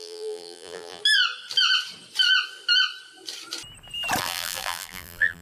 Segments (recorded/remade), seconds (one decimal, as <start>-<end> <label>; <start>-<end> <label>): 0.0-1.0 remade; 1.0-4.2 recorded; 4.2-5.4 remade